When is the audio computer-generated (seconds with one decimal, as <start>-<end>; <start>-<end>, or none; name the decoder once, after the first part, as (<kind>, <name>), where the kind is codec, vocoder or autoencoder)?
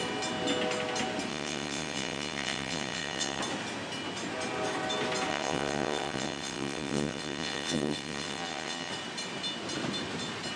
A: 1.3-3.4 (vocoder, WaveNeXt); 5.3-8.9